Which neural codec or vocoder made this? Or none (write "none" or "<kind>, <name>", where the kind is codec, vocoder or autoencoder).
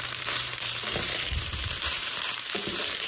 vocoder, BigVGAN v2